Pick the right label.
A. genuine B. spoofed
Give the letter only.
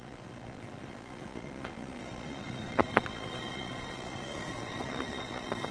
B